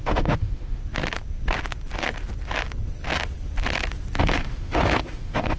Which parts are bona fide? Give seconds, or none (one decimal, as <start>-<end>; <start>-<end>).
0.8-4.2